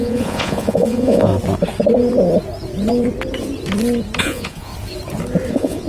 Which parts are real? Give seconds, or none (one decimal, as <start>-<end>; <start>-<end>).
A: 1.3-4.2; 4.7-5.5

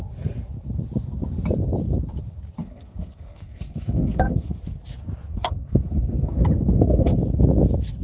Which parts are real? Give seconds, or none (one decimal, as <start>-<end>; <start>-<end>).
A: 0.0-2.6; 4.6-5.3; 7.2-8.0

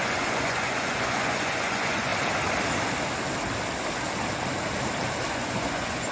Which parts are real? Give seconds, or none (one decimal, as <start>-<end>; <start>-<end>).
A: 2.1-5.3